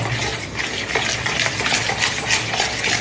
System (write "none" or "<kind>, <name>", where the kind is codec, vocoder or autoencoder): none